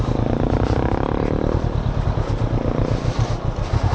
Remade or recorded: recorded